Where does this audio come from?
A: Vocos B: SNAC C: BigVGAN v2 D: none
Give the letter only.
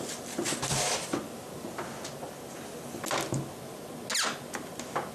D